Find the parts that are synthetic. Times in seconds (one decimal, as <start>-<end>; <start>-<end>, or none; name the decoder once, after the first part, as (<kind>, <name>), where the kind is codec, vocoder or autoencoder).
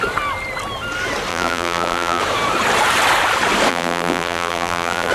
1.3-2.2 (vocoder, BigVGAN v2); 3.7-5.1